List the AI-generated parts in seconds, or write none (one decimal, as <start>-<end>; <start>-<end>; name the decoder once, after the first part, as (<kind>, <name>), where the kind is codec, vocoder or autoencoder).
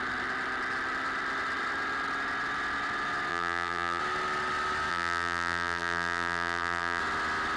3.3-4.0 (vocoder, BigVGAN v2); 4.9-7.0